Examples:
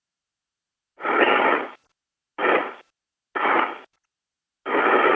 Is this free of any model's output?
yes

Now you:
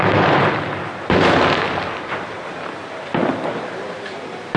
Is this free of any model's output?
yes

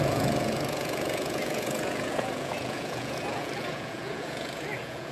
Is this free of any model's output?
no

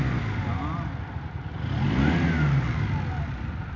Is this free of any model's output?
yes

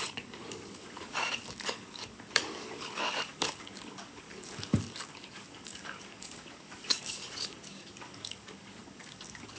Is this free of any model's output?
no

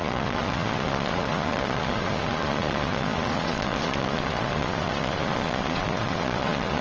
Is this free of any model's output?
no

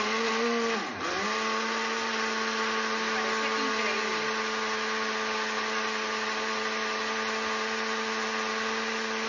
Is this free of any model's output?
yes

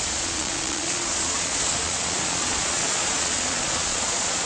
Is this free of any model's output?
no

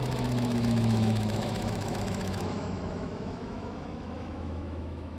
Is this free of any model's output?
no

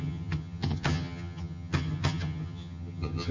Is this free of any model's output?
no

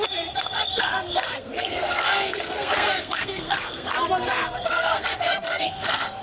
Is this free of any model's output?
no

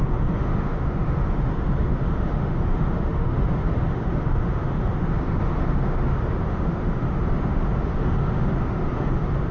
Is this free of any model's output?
no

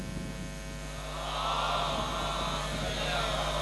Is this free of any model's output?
yes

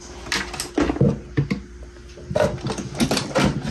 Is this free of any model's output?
yes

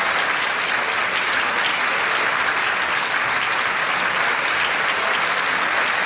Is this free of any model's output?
yes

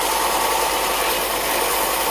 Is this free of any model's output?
yes